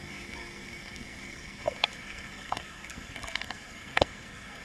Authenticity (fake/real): fake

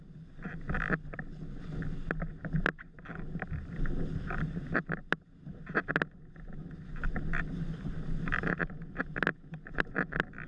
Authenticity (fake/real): real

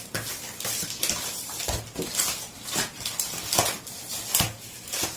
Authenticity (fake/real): real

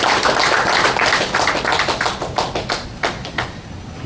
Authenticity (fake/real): real